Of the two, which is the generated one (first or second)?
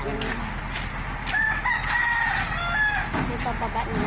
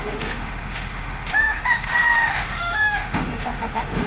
second